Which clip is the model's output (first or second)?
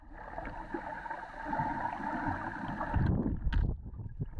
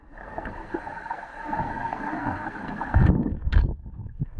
second